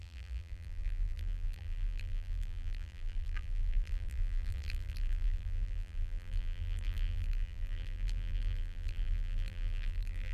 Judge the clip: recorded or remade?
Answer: remade